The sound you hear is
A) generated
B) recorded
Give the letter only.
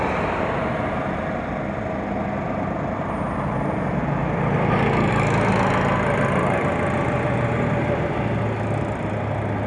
B